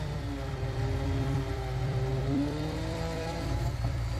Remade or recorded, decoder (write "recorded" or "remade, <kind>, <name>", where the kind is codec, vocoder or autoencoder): remade, vocoder, BigVGAN v2